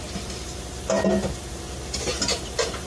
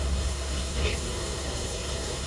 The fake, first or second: second